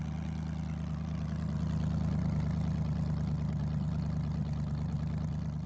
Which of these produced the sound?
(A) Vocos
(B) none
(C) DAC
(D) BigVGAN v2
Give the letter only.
B